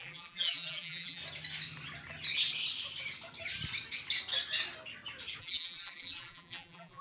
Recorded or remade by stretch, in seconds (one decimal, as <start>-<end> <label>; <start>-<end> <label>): 0.0-1.2 remade; 1.2-5.4 recorded; 5.4-7.0 remade